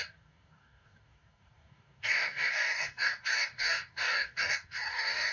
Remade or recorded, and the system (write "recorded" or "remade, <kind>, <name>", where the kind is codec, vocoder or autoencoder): remade, codec, DAC